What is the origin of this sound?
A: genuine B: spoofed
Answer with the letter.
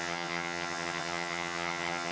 B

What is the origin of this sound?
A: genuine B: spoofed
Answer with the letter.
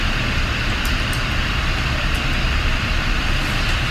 A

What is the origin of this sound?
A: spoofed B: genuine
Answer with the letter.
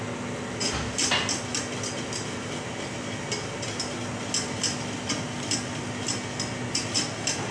B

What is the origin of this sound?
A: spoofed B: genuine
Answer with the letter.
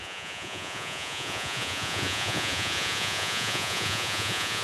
A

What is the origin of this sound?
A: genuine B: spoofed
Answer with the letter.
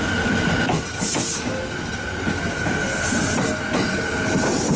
A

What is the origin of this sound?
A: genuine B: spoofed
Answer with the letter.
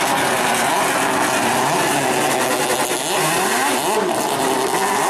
A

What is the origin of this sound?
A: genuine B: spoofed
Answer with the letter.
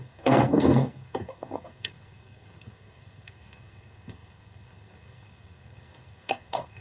B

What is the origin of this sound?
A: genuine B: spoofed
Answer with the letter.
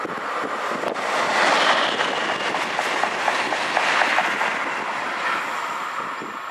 A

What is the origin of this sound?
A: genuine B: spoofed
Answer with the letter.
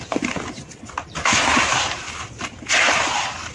B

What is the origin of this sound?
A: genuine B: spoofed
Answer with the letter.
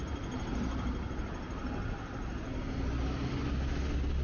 A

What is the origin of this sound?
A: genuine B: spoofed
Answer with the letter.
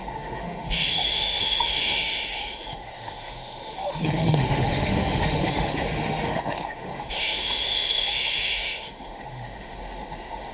B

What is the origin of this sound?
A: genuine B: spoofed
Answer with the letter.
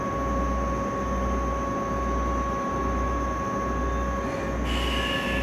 A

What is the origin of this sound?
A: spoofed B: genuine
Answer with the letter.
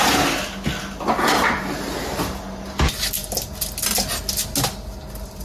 B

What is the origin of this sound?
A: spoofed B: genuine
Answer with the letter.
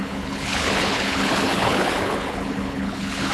A